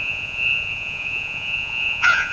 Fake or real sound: fake